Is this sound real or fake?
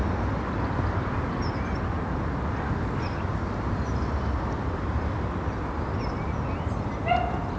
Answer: real